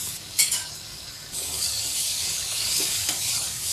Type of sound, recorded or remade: remade